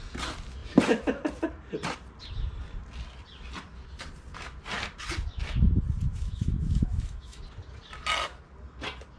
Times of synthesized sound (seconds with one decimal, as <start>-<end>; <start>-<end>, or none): 6.1-7.4